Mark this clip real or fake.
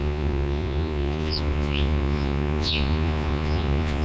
fake